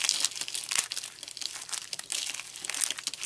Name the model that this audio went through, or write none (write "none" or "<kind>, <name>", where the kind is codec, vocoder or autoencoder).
none